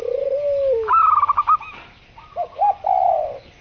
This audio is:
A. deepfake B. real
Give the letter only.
B